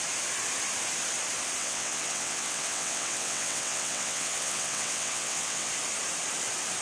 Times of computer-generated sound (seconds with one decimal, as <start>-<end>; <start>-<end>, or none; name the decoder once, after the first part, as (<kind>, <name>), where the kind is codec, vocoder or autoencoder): 1.6-5.7 (vocoder, WaveNeXt)